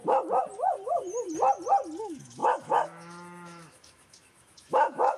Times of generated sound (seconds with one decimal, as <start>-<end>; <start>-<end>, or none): 2.0-5.2